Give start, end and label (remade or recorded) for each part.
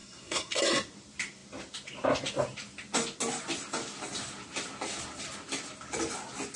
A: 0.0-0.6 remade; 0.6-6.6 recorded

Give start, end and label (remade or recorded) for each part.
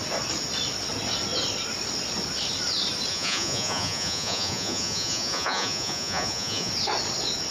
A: 0.0-3.1 recorded; 3.1-6.7 remade; 6.7-7.5 recorded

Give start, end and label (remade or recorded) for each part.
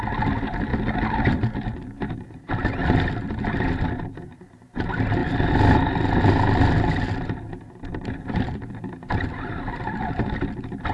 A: 0.0-10.9 recorded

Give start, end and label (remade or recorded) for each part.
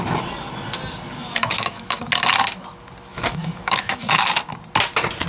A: 0.0-1.2 recorded; 1.2-2.0 remade; 2.0-3.1 recorded; 3.1-4.3 remade; 4.3-5.3 recorded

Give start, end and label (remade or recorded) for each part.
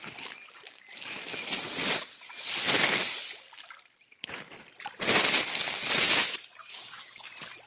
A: 0.0-6.6 recorded; 6.6-7.2 remade; 7.2-7.7 recorded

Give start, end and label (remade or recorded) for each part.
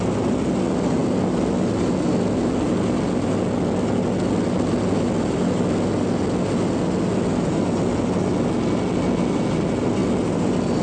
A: 0.0-10.8 recorded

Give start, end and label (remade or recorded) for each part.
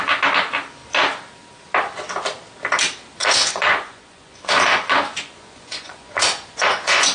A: 0.0-3.2 recorded; 3.2-7.1 remade